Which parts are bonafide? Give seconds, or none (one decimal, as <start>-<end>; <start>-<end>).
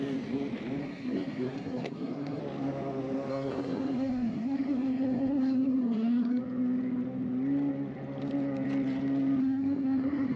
0.0-0.8; 2.4-3.3; 6.4-9.4